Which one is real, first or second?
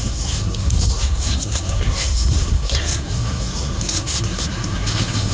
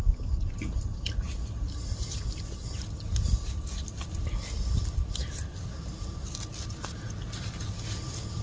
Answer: second